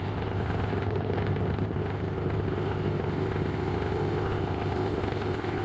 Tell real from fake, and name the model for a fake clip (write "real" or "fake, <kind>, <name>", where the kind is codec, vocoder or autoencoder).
fake, codec, ZipCodec